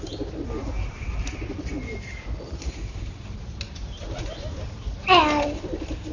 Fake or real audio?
real